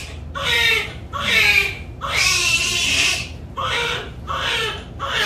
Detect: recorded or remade remade